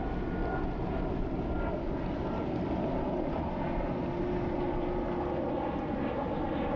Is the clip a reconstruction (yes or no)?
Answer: no